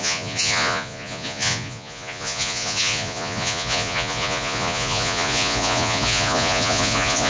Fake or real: fake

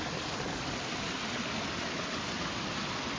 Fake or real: real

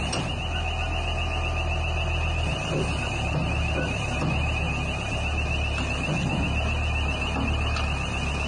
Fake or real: real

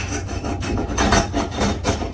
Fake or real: fake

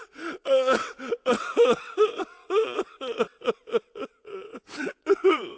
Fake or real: fake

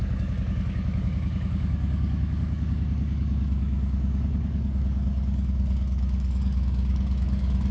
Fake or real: fake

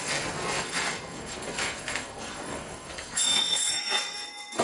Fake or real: fake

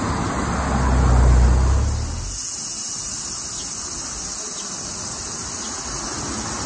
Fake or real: real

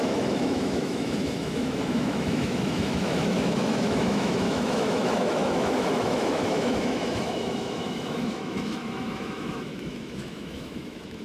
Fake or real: fake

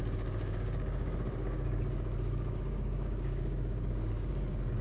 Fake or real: fake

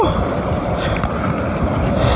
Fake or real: real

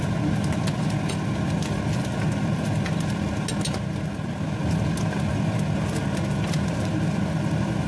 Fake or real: real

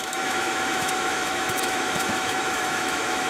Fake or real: fake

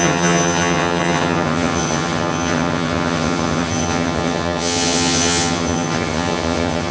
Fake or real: fake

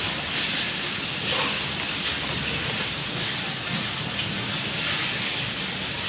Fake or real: real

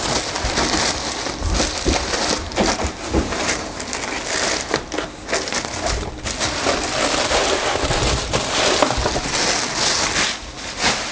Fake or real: real